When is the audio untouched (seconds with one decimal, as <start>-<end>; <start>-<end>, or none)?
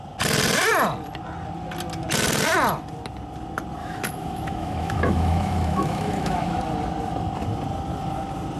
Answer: 0.0-3.8; 6.6-8.6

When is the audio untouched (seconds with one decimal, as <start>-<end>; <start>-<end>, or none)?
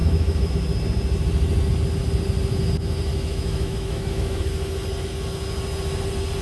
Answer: 0.5-3.1; 4.4-6.4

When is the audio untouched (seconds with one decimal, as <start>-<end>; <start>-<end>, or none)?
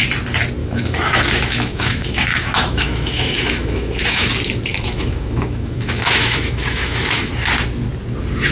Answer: 0.0-0.6; 4.3-4.7; 7.3-8.5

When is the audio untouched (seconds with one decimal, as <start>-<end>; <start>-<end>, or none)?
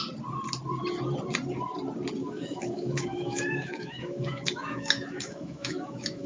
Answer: 0.0-2.2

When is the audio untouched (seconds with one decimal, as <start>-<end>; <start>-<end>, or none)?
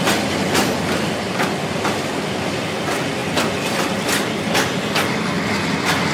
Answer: 0.0-6.1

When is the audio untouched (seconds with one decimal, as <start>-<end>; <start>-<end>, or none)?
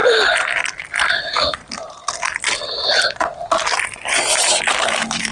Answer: 0.0-1.2; 1.6-4.8